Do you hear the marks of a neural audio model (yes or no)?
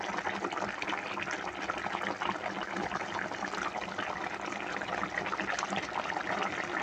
no